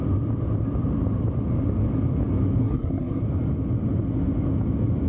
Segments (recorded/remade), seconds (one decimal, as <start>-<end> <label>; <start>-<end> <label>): 0.0-2.6 recorded; 2.6-3.2 remade; 3.2-5.1 recorded